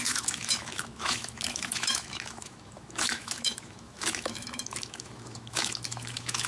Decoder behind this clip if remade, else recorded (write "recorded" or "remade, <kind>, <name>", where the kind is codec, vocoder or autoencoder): remade, autoencoder, DAC-VAE